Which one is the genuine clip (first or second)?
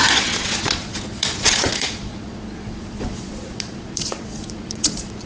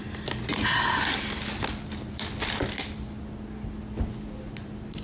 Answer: second